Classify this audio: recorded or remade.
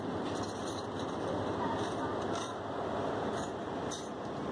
recorded